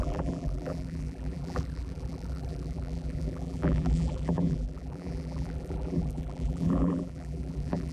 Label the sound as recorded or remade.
remade